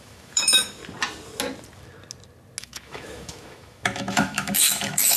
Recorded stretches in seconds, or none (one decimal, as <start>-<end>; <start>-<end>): 0.8-2.6